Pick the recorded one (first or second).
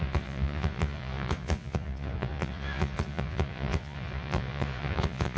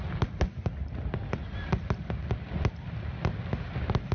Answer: second